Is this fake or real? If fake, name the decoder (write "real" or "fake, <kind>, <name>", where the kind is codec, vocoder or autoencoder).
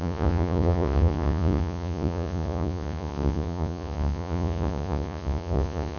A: fake, vocoder, Vocos